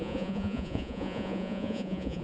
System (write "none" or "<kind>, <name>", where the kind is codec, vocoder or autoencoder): vocoder, Vocos